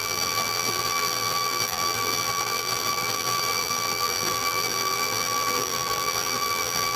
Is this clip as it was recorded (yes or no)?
no